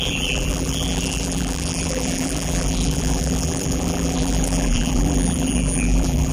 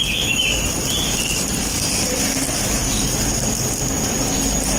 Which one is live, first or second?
second